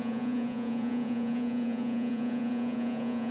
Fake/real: fake